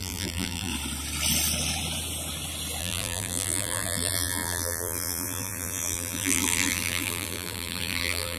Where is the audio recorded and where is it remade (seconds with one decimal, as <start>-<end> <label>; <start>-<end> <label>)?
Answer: 0.0-0.7 remade; 0.7-2.8 recorded; 2.8-8.4 remade